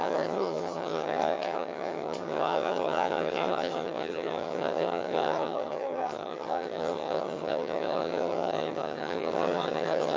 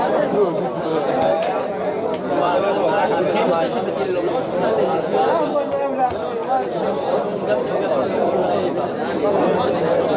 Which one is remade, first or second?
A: first